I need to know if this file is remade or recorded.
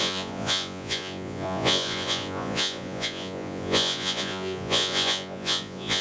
remade